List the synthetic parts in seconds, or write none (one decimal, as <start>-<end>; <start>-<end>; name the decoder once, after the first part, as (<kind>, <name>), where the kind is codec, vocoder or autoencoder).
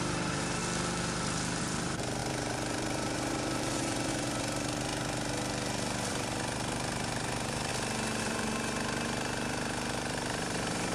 0.0-0.6 (vocoder, BigVGAN v2); 1.6-4.9; 6.1-7.7; 8.2-10.9